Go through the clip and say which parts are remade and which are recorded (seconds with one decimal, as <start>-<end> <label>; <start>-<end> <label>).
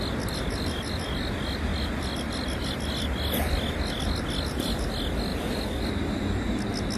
0.0-7.0 recorded